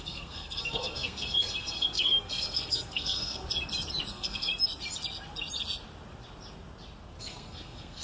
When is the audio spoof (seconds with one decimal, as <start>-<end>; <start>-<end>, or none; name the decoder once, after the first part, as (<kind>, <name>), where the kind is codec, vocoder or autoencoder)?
0.0-3.4 (codec, SNAC); 4.1-4.5; 7.2-8.0